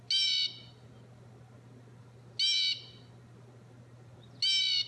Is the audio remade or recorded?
recorded